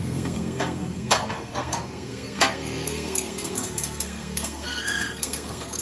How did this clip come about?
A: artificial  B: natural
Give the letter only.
A